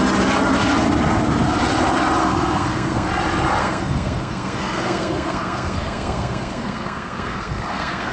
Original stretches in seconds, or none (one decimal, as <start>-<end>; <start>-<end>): 0.0-2.2; 3.1-3.6